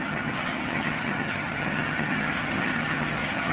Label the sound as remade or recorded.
remade